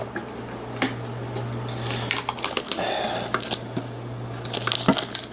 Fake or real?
real